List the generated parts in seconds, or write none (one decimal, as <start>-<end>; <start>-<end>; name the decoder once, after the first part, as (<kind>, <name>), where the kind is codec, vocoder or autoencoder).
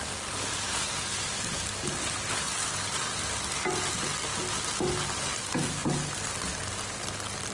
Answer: none